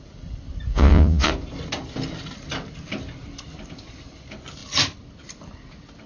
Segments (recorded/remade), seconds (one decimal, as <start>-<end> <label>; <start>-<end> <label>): 0.0-0.7 recorded; 0.7-1.3 remade; 1.3-6.1 recorded